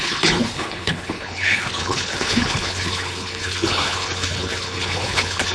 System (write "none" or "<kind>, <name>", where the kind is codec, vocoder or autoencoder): codec, HILCodec